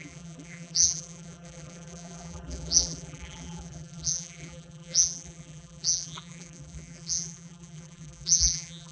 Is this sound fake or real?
fake